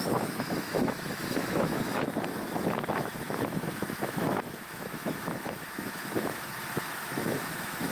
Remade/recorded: remade